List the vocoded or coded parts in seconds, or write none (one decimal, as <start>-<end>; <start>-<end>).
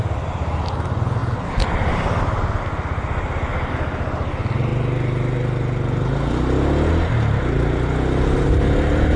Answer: none